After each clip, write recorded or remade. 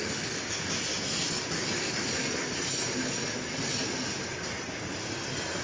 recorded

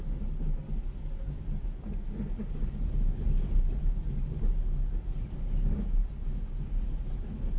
recorded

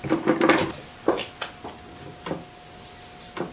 recorded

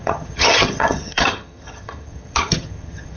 remade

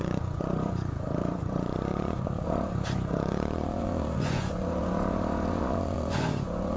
remade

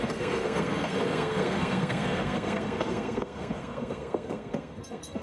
remade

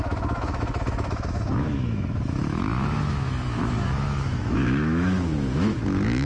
remade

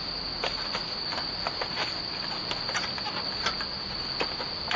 recorded